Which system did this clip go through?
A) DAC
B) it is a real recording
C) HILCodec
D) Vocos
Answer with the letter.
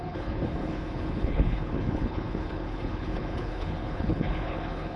C